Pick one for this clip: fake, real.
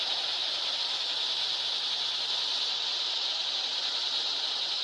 real